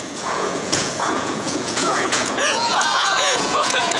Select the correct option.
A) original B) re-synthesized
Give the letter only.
B